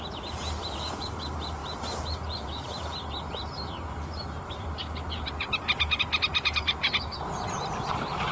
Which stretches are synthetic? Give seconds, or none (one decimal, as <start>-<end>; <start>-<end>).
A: none

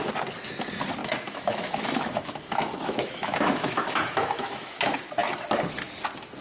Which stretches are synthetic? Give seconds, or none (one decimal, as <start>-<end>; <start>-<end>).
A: 1.0-4.8

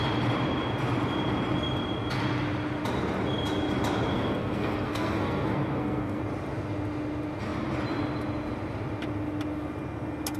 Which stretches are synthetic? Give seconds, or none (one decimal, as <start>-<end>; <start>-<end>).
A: 4.1-6.2

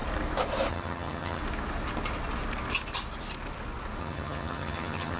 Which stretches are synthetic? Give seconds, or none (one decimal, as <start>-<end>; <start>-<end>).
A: 0.7-1.4; 4.0-5.2

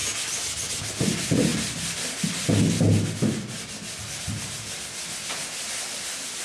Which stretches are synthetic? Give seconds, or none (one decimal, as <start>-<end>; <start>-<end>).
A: none

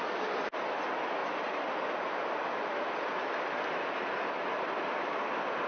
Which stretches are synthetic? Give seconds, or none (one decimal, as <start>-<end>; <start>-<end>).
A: none

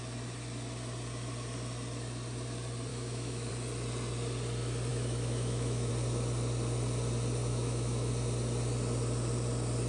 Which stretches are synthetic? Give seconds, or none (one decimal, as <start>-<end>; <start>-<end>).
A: 2.9-3.5; 4.9-5.9; 7.5-8.1

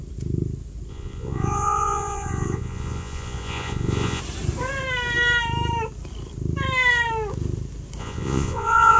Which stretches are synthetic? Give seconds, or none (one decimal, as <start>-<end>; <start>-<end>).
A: 0.9-4.2; 8.0-9.0